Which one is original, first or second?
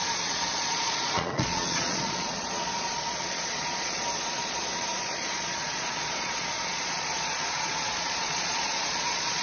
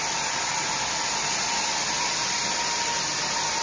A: second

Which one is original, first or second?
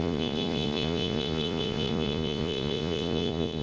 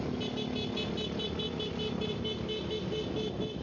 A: second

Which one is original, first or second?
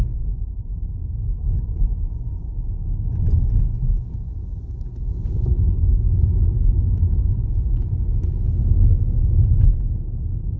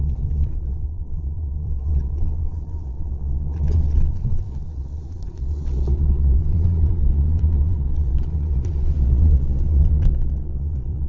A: first